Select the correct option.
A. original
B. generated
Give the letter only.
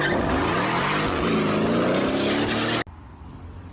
A